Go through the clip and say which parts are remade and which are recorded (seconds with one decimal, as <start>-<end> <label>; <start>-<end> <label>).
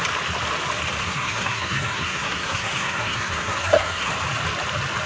0.0-1.0 recorded; 1.0-4.1 remade; 4.1-5.1 recorded